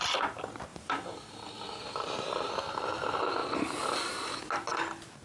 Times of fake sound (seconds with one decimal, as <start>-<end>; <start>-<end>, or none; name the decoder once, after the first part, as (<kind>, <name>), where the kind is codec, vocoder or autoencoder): 0.7-2.5 (vocoder, BigVGAN v2); 3.4-4.4